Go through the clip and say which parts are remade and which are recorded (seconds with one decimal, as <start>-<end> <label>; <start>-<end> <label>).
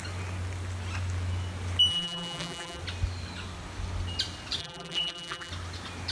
0.0-1.9 recorded; 1.9-2.8 remade; 2.8-4.6 recorded; 4.6-5.5 remade; 5.5-6.1 recorded